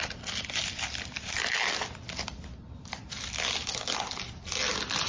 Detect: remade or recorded recorded